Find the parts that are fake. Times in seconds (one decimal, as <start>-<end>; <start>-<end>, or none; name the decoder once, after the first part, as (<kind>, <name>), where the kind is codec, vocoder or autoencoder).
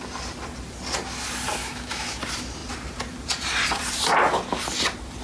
1.6-2.2 (autoencoder, DAC-VAE)